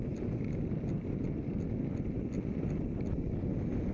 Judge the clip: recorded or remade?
recorded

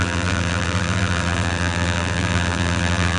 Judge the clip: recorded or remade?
remade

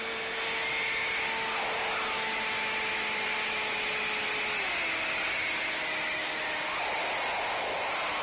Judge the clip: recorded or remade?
recorded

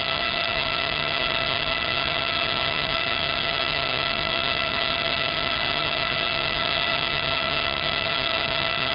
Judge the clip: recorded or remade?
remade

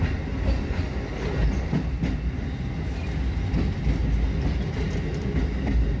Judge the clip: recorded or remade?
recorded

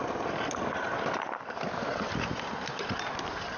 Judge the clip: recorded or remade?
recorded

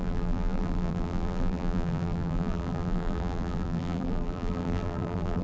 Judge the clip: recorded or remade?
remade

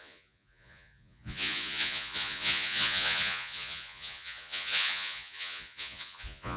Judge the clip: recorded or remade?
remade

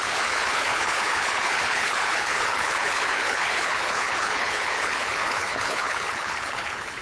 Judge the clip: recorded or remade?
remade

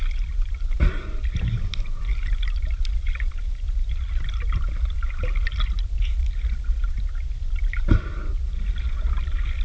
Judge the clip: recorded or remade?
recorded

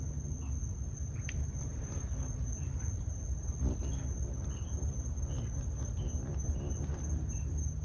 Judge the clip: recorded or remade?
recorded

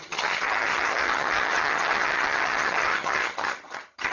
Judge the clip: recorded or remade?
remade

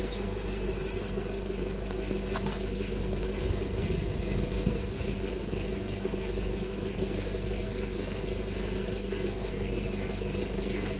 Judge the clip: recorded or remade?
remade